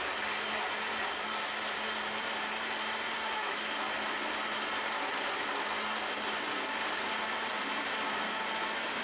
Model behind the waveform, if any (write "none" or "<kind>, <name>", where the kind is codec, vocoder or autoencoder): none